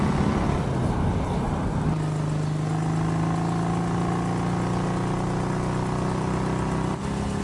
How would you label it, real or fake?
real